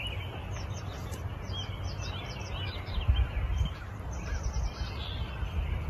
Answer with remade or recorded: recorded